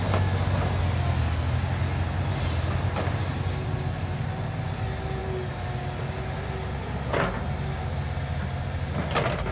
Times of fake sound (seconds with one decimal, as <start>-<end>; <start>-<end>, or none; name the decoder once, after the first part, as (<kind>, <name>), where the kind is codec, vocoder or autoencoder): none